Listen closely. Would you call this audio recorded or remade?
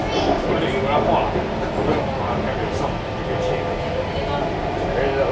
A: recorded